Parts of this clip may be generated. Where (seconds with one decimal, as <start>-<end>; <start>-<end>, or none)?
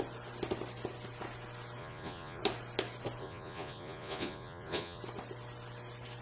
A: 1.8-2.4; 3.2-5.0